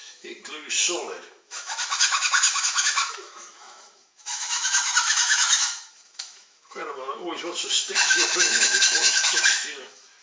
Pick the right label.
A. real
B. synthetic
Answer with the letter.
B